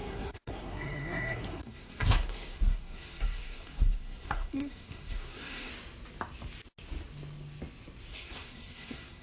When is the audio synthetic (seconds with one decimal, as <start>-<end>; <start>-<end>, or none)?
0.0-5.7; 8.1-9.2